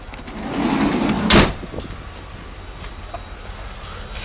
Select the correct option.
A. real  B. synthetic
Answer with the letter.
A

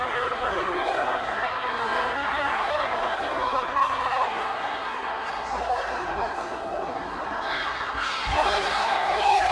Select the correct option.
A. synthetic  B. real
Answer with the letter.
A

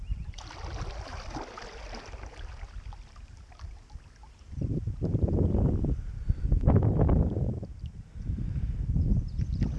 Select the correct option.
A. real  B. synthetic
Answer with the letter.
A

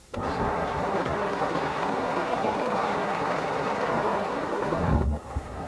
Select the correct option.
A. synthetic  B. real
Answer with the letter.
A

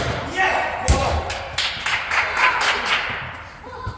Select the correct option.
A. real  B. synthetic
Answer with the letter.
A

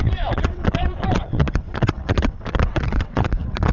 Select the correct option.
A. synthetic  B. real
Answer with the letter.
A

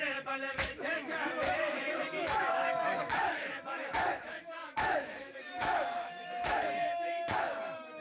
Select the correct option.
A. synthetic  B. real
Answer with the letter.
A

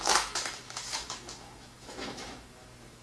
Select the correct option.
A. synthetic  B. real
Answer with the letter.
A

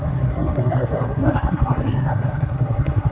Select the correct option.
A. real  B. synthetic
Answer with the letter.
B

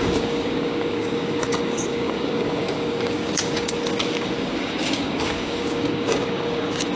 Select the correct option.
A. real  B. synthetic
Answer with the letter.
B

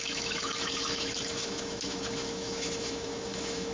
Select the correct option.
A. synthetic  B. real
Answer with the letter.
A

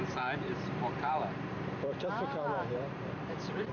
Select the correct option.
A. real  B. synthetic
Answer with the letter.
B